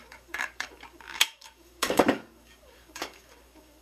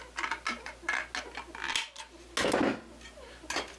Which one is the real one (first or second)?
second